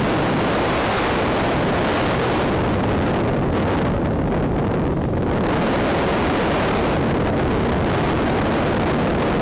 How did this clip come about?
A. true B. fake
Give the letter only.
A